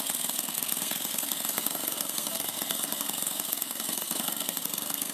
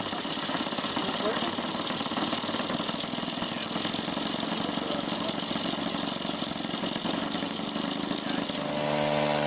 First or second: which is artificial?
first